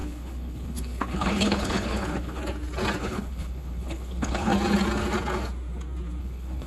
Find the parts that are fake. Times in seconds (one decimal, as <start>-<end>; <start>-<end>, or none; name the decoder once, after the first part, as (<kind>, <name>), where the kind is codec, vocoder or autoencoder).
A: 0.0-2.4 (codec, HILCodec); 3.0-4.5; 6.2-6.7